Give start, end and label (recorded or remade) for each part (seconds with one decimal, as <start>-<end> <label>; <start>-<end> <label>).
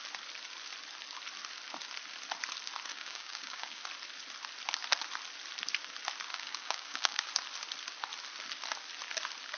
0.0-2.9 recorded; 2.9-3.8 remade; 3.8-6.3 recorded; 6.3-7.3 remade; 7.3-9.6 recorded